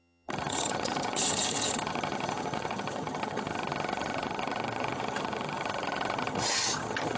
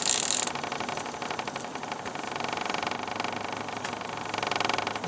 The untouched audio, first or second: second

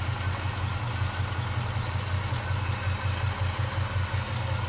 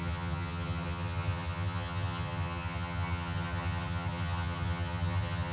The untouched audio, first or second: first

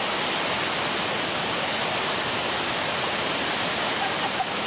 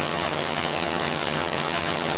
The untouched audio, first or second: first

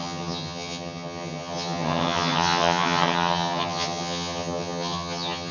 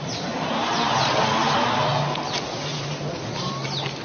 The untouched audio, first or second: second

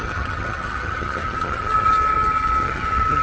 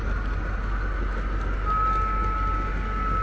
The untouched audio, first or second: second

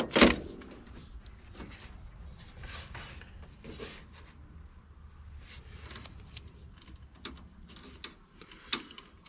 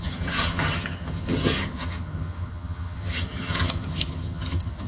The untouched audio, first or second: first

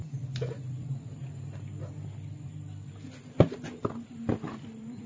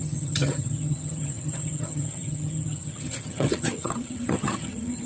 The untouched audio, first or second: first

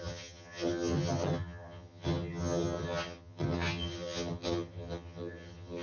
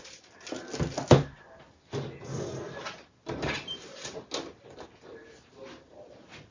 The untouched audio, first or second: second